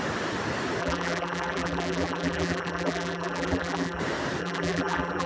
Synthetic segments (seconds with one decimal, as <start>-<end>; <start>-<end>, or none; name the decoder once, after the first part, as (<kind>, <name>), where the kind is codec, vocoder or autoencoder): 0.8-4.0 (vocoder, BigVGAN v2); 4.4-5.3